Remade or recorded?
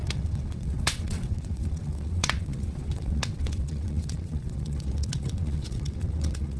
remade